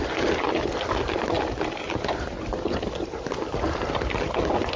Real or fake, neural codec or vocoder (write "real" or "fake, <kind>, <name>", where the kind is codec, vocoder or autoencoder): real